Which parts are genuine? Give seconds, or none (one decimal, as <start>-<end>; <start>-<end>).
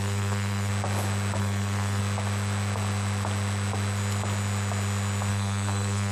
0.7-1.4; 2.0-5.3